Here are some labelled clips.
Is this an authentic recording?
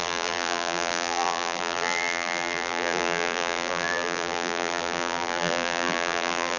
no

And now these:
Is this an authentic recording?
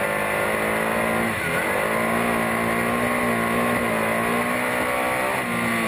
yes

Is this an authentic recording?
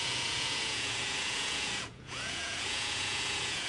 no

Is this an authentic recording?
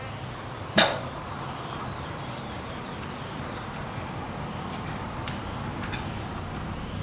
no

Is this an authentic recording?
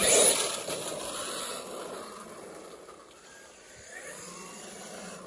yes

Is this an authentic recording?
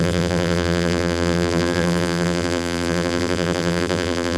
no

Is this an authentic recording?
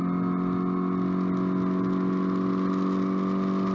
yes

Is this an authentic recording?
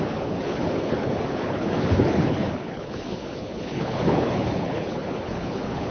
no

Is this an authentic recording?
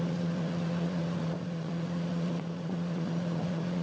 no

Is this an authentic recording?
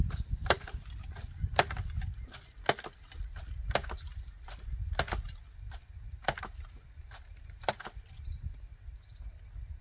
yes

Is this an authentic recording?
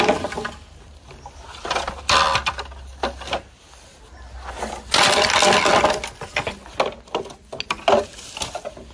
yes